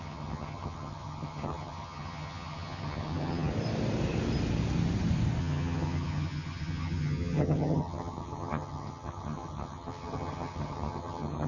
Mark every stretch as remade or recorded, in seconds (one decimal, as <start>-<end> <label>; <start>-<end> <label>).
0.0-3.5 remade; 3.5-5.4 recorded; 5.4-11.5 remade